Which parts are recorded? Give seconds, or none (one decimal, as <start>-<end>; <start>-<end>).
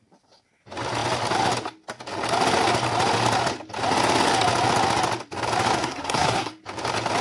0.0-5.8; 6.5-7.2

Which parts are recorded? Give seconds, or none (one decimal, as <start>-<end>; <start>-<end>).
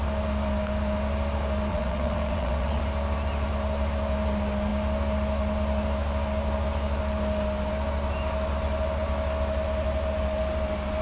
0.0-1.7; 2.8-11.0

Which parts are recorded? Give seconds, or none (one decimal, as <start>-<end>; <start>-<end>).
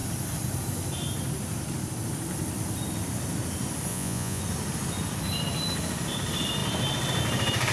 0.0-3.9; 4.4-7.7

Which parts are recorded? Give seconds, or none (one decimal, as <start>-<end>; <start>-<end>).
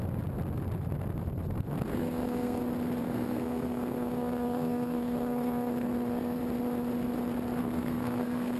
0.0-1.9; 2.6-3.0; 6.4-7.6